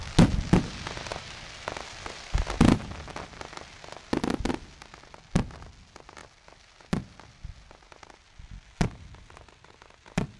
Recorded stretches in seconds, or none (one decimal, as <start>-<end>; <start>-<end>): 0.0-10.4